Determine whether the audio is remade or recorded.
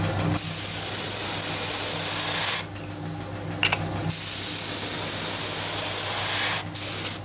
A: recorded